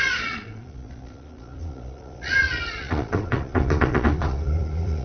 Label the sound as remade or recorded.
remade